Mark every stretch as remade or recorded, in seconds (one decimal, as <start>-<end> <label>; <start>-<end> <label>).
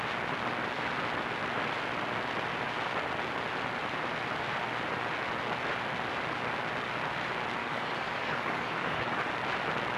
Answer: 0.0-7.6 recorded; 7.6-9.3 remade; 9.3-10.0 recorded